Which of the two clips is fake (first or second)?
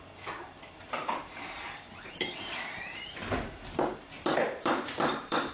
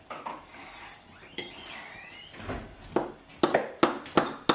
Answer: first